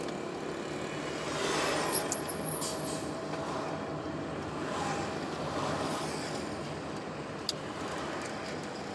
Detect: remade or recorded recorded